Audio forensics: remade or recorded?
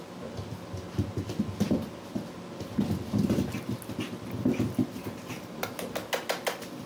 recorded